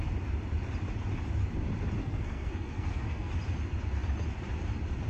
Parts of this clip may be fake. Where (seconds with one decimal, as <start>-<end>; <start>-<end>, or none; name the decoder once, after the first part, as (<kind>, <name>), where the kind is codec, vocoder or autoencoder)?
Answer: 2.0-3.3 (codec, SNAC)